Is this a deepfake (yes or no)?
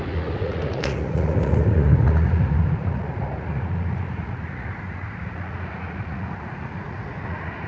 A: yes